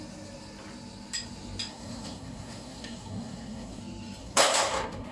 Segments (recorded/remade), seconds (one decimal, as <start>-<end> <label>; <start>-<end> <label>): 0.0-1.7 recorded; 1.7-3.8 remade; 3.8-4.2 recorded; 4.2-5.1 remade